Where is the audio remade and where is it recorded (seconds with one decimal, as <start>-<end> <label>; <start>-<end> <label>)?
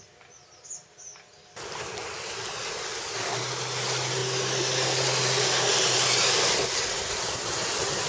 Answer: 0.0-8.1 recorded